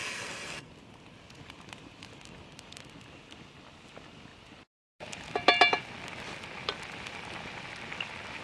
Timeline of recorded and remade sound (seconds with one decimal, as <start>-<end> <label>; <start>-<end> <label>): 0.0-0.7 remade; 0.7-8.4 recorded